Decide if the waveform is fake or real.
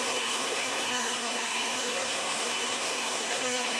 fake